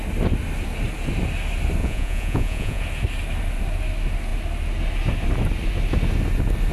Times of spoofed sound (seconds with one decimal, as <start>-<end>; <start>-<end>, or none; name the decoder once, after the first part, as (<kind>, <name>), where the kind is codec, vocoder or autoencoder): 1.8-2.8 (vocoder, Vocos)